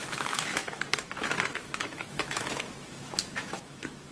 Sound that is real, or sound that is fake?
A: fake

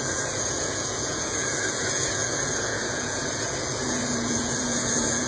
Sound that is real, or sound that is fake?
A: fake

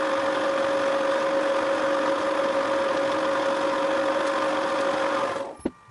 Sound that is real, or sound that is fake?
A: real